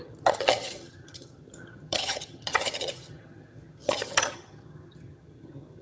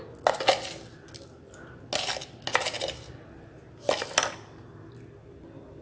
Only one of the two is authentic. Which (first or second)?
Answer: second